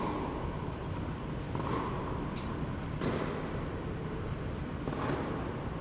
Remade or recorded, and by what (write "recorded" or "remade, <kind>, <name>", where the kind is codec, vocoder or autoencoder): recorded